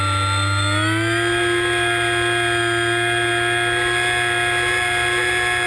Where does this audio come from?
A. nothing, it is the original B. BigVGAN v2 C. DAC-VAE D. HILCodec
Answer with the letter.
A